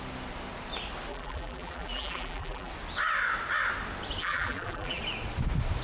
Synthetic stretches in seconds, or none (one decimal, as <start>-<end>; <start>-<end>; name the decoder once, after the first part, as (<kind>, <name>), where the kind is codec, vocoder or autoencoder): 1.1-2.7 (vocoder, BigVGAN v2); 4.2-5.0